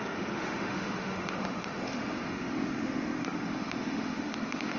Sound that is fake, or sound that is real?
fake